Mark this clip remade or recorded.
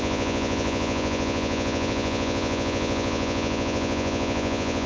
remade